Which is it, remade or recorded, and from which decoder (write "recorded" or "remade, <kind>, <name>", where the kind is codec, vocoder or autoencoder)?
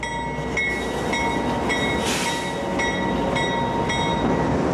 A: recorded